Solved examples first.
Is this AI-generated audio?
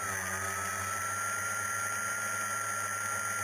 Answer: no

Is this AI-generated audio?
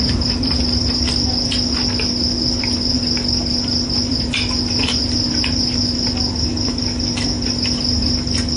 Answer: no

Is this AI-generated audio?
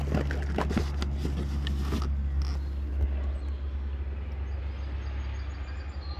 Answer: no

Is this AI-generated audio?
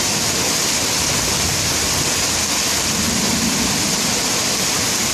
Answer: no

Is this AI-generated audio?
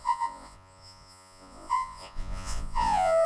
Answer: yes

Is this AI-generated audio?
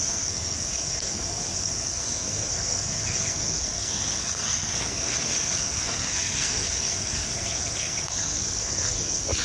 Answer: yes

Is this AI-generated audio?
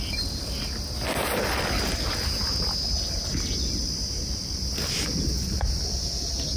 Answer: no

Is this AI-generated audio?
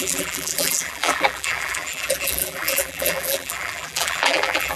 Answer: yes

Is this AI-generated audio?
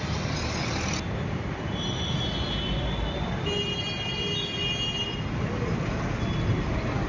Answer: no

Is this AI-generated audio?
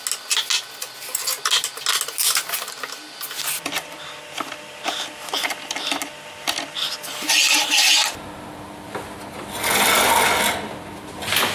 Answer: no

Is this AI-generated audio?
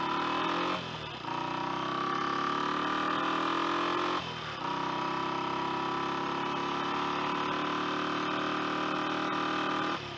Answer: no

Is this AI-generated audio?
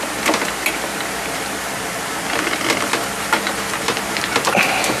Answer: no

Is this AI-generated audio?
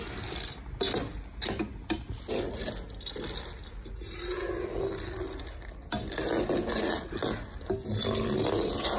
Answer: no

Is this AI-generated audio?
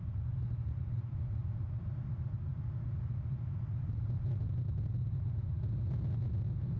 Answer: no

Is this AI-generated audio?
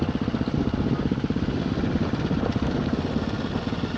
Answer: no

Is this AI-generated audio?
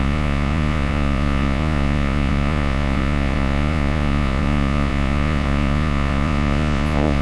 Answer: yes